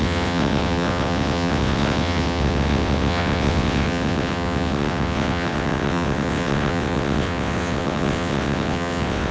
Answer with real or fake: fake